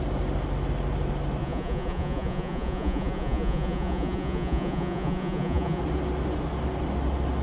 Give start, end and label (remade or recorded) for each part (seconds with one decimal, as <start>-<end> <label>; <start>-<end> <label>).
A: 0.0-1.4 recorded; 1.4-5.8 remade; 5.8-7.4 recorded